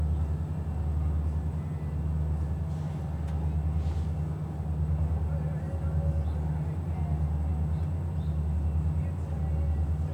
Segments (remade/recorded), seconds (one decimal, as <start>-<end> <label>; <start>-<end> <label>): 0.0-10.1 recorded